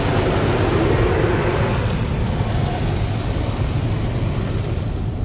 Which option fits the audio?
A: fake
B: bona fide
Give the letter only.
B